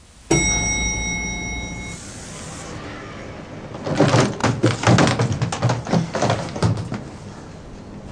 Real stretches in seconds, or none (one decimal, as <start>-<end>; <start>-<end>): 0.0-8.1